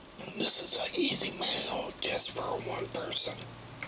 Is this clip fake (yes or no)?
no